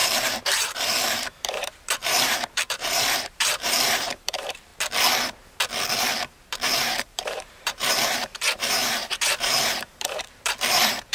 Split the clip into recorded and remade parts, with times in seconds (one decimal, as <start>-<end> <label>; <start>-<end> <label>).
0.0-4.7 remade; 4.7-6.7 recorded; 6.7-11.1 remade